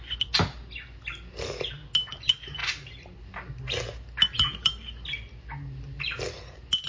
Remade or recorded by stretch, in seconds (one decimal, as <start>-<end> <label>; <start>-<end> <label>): 0.0-6.9 recorded